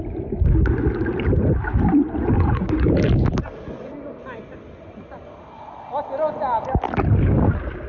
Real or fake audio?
real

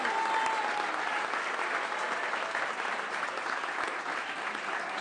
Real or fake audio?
real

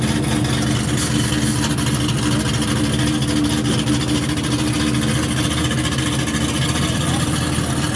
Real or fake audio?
real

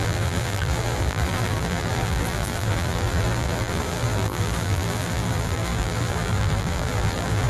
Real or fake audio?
fake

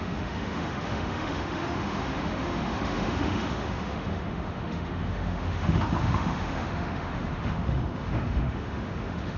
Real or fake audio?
fake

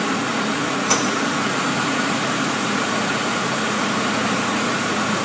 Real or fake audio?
fake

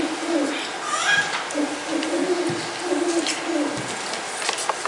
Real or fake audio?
real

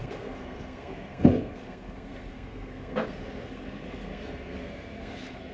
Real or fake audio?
fake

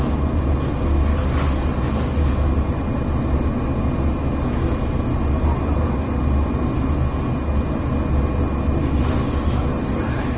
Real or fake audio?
real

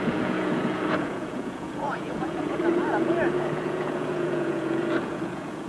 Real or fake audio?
fake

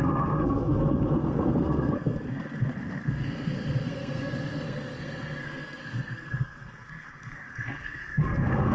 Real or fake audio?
fake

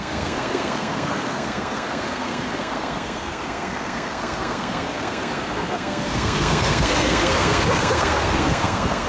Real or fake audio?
fake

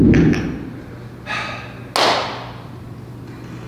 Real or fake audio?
real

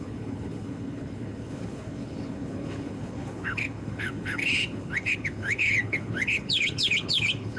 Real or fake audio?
fake